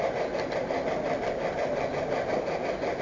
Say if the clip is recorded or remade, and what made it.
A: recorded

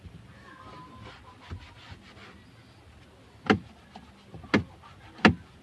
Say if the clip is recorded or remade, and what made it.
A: recorded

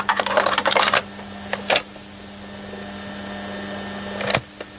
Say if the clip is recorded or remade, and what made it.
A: recorded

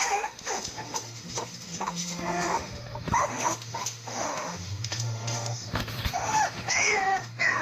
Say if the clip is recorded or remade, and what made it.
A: remade, autoencoder, DAC-VAE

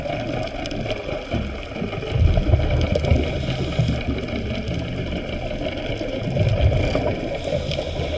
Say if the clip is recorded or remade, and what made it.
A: recorded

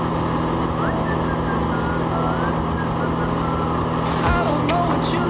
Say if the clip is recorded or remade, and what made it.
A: recorded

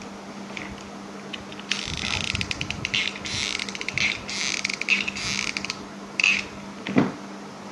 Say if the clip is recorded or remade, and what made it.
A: recorded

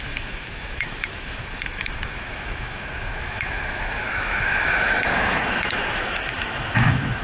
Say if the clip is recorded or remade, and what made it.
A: remade, autoencoder, DAC-VAE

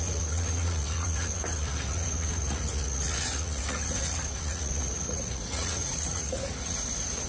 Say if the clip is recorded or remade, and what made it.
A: remade, vocoder, Vocos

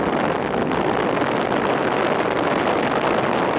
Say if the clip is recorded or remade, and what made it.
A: recorded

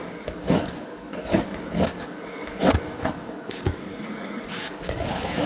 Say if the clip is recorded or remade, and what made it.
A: remade, codec, DAC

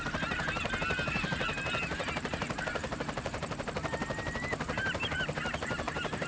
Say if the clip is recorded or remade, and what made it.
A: remade, vocoder, BigVGAN v2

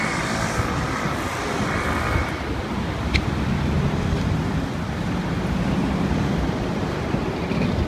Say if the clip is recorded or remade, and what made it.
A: remade, vocoder, BigVGAN v2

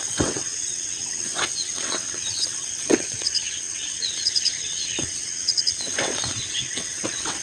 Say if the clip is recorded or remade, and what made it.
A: remade, vocoder, WaveNeXt